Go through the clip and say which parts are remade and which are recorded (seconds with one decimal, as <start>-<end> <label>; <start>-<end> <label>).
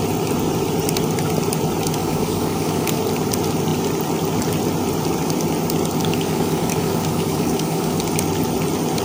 0.0-2.0 recorded; 2.0-3.0 remade; 3.0-6.0 recorded; 6.0-8.0 remade; 8.0-9.0 recorded